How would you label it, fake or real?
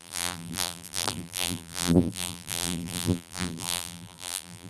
fake